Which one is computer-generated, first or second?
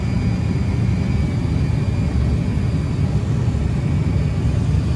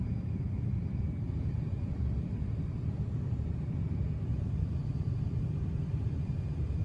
second